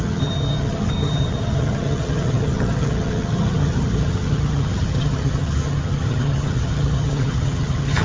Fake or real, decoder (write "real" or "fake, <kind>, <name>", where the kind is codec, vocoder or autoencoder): fake, vocoder, HiFi-GAN